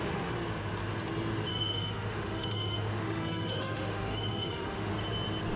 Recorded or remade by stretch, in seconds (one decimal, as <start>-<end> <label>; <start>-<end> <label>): 0.0-1.5 recorded; 1.5-4.9 remade; 4.9-5.6 recorded